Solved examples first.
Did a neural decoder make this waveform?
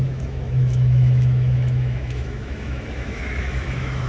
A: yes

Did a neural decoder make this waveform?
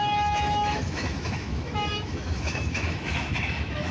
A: yes